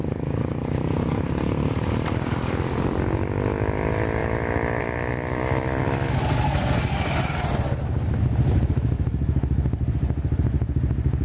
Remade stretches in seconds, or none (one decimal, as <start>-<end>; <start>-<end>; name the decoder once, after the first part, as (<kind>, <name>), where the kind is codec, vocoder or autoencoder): none